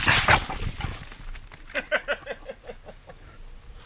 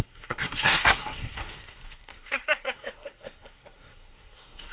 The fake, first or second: second